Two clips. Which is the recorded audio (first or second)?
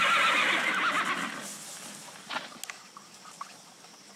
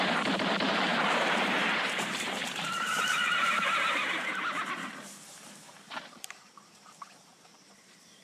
first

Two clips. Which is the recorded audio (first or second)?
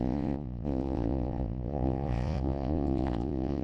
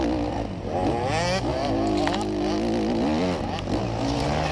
second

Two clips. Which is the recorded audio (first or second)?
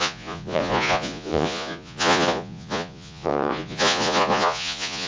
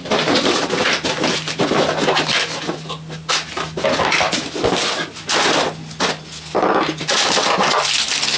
second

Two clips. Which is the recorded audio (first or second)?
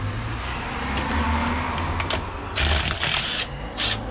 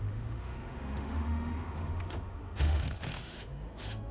first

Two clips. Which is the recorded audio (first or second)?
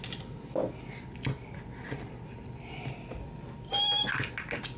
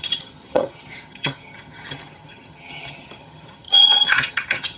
first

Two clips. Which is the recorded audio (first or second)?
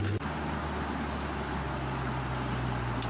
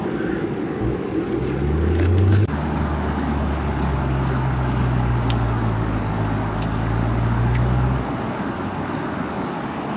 first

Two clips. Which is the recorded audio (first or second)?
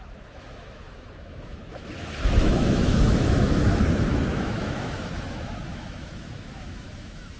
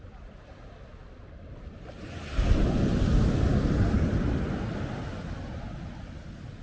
second